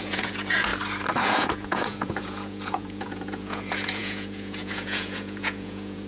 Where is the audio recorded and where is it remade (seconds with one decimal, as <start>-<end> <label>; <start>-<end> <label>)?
0.0-0.7 remade; 0.7-1.2 recorded; 1.2-6.1 remade

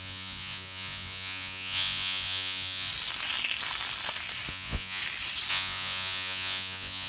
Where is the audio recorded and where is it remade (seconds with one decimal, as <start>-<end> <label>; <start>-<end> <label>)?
0.0-2.9 remade; 2.9-4.5 recorded; 4.5-5.0 remade; 5.0-5.5 recorded; 5.5-7.1 remade